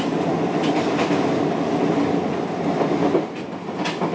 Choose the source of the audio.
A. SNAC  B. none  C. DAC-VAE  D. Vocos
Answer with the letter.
B